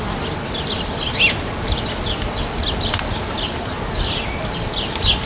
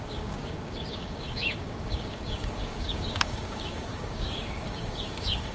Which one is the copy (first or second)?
second